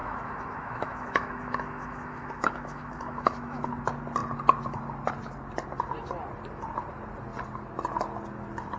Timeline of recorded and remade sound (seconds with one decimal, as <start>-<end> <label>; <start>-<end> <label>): 0.0-3.7 remade; 3.7-8.8 recorded